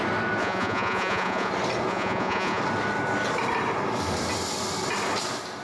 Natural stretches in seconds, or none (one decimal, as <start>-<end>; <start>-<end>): 0.0-0.4; 1.5-1.9; 2.6-5.6